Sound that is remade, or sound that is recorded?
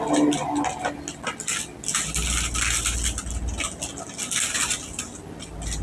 recorded